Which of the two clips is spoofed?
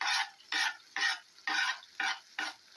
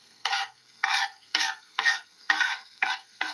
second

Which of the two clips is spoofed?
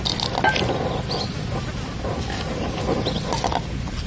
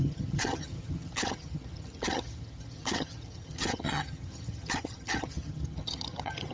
second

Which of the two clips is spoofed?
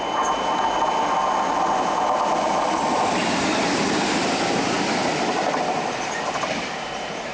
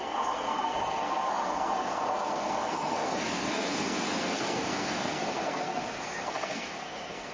second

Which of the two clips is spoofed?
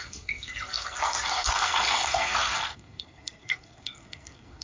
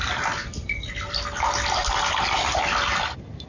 first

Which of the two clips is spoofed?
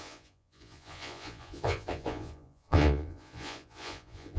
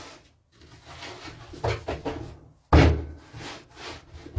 first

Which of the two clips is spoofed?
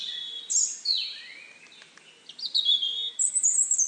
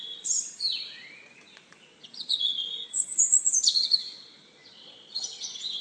second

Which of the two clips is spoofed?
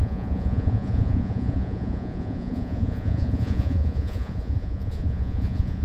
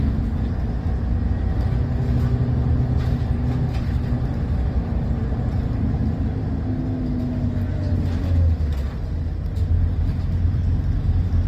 first